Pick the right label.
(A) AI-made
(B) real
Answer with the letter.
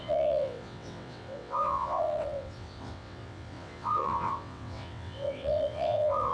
A